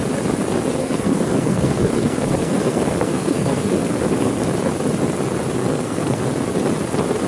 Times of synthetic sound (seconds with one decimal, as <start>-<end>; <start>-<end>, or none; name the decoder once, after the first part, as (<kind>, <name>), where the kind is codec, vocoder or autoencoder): 0.8-4.3 (codec, SNAC); 5.6-6.2